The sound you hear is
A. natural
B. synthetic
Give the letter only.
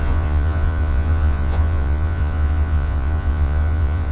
B